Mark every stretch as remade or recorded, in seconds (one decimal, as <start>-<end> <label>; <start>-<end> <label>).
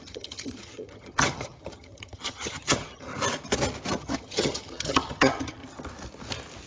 0.0-3.1 remade; 3.1-4.0 recorded; 4.0-5.6 remade; 5.6-6.7 recorded